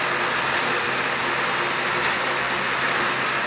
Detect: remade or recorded recorded